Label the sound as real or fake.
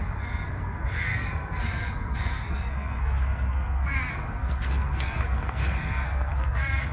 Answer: fake